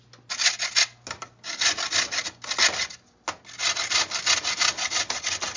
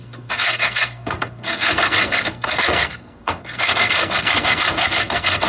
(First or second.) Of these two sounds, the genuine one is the first